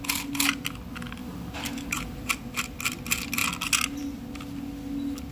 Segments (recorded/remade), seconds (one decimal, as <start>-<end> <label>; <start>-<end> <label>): 0.0-1.2 recorded; 1.2-2.3 remade; 2.3-5.3 recorded